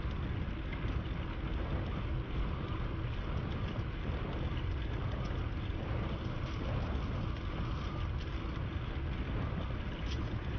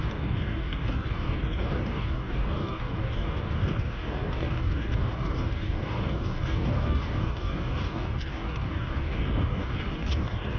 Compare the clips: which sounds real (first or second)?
first